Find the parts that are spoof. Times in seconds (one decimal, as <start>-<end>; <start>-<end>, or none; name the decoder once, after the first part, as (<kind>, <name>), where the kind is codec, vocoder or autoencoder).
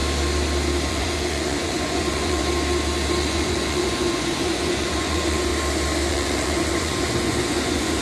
0.9-2.4 (vocoder, Vocos); 3.2-5.5; 6.1-8.0